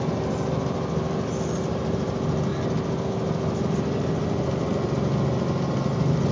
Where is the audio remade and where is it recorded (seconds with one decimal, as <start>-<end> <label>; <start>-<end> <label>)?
0.0-6.3 recorded